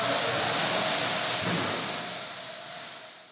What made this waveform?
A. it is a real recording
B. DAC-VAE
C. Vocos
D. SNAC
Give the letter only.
A